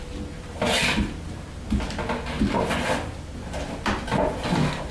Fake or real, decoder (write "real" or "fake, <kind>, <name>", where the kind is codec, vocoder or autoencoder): real